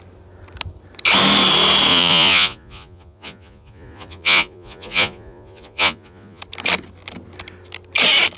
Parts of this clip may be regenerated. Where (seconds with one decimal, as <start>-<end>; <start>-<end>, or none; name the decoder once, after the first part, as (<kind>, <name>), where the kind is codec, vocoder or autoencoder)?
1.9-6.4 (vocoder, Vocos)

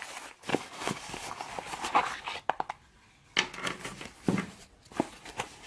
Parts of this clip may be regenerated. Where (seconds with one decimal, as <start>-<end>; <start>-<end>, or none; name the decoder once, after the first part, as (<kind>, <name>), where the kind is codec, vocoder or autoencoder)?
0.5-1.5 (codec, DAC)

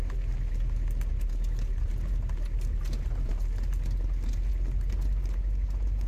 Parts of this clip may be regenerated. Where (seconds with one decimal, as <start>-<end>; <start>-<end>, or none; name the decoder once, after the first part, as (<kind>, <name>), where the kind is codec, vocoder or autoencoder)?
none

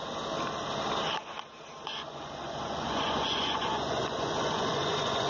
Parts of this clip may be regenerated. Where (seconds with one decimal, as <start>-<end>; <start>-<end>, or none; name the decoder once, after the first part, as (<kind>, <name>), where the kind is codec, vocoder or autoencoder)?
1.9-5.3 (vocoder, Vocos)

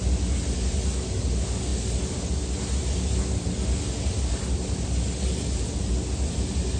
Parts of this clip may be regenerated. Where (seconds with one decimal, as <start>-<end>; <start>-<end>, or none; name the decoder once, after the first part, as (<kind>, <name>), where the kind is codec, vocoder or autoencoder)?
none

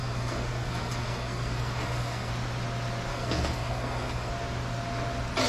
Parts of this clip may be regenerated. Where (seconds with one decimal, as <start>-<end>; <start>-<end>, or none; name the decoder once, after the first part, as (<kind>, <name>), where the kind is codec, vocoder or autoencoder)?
0.0-2.3 (codec, SNAC); 3.1-4.3